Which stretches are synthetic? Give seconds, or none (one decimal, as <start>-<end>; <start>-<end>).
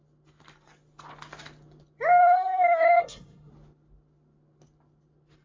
2.2-3.5